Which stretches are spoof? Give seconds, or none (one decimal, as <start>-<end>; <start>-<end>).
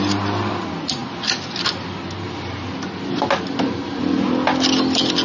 none